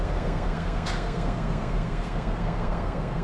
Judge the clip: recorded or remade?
remade